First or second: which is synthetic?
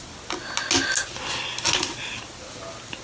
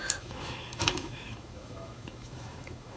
second